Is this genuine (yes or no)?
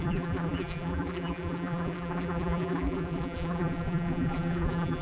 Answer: no